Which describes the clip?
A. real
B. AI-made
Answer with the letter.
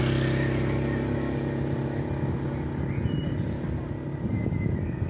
A